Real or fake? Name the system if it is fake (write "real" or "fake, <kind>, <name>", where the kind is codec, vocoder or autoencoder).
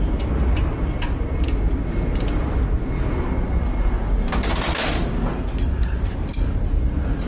real